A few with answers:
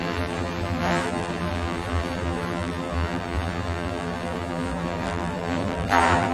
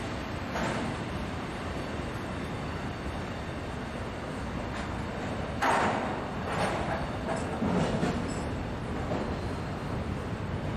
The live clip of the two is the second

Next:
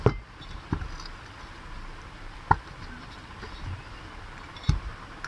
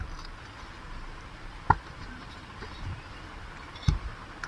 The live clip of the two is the first